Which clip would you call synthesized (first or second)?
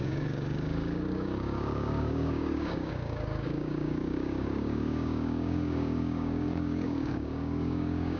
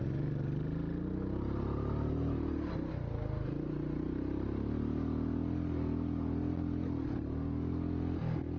first